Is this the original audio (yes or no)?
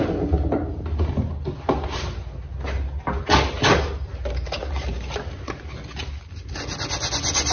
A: yes